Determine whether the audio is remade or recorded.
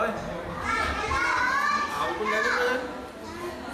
recorded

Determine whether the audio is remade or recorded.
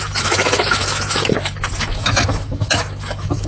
remade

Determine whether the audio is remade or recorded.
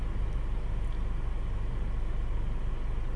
recorded